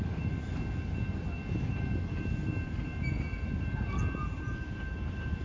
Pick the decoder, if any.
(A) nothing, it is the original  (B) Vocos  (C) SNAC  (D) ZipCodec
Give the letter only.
A